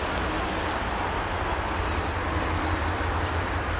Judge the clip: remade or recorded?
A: recorded